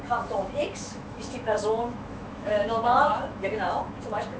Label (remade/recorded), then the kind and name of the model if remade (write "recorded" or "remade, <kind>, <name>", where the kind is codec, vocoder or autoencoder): remade, autoencoder, DAC-VAE